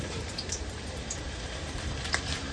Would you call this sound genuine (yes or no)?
no